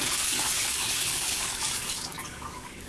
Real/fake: fake